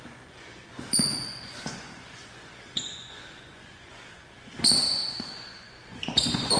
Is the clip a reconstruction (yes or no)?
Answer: yes